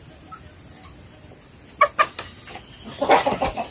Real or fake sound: real